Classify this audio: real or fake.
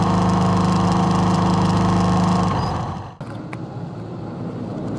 real